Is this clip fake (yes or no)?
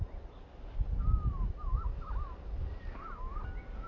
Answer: no